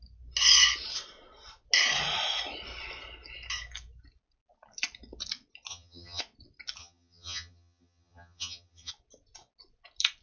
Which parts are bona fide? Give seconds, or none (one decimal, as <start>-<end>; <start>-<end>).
0.0-5.7; 6.2-6.8; 8.9-10.2

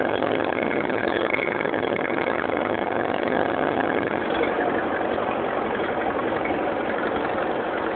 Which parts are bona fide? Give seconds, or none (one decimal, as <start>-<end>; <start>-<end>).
4.2-8.0

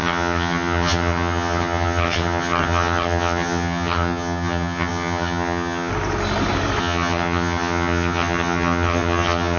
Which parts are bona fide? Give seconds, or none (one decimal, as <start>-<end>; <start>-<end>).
5.9-6.8

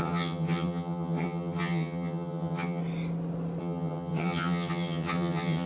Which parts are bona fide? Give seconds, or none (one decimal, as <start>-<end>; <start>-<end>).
2.8-3.6

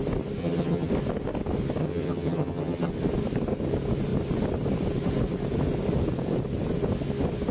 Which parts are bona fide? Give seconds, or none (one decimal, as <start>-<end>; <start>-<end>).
0.0-0.4; 0.9-1.8; 2.9-7.5